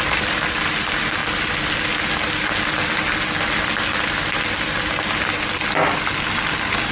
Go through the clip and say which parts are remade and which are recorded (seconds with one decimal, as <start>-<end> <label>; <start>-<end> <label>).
0.0-6.9 recorded

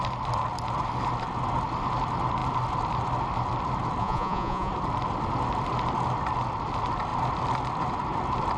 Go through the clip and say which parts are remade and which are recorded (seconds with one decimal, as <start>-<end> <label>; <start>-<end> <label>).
0.0-4.0 recorded; 4.0-4.7 remade; 4.7-8.6 recorded

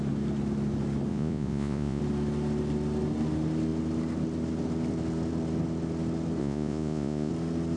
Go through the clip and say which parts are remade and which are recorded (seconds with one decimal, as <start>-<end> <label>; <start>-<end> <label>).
0.0-1.1 recorded; 1.1-2.0 remade; 2.0-6.4 recorded; 6.4-7.3 remade; 7.3-7.8 recorded